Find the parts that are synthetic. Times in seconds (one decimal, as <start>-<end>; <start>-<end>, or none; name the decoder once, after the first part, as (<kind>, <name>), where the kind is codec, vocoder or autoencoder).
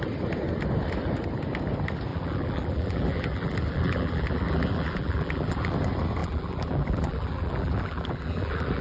2.1-5.7 (vocoder, BigVGAN v2); 6.2-8.8